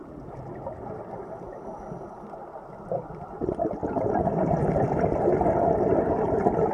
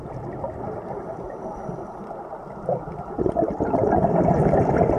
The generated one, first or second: second